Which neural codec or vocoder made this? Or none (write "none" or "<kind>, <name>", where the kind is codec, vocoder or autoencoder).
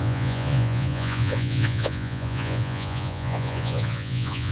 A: vocoder, Vocos